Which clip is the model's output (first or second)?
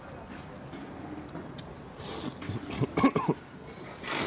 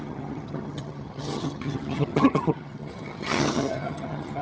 second